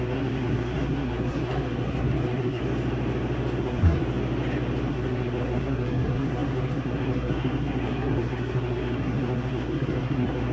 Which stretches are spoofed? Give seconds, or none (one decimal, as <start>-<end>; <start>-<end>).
0.0-2.6; 3.6-4.0; 4.9-10.5

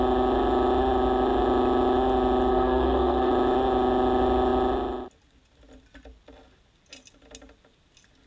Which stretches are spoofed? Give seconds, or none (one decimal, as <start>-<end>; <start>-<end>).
2.5-3.3

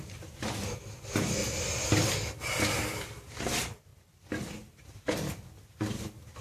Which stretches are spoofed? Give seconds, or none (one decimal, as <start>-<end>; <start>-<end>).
0.0-3.9; 5.7-6.4

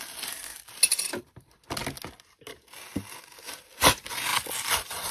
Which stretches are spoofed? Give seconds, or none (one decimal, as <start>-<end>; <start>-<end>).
none

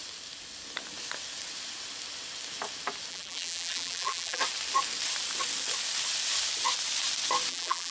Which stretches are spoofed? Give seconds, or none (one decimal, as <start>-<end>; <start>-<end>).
3.1-4.4; 7.5-7.9

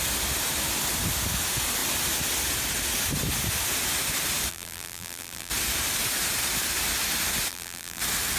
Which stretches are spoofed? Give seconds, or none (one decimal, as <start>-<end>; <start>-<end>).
4.5-5.5; 7.5-8.0

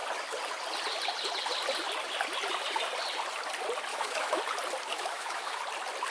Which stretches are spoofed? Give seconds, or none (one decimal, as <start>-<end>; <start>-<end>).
3.9-4.4; 4.9-5.6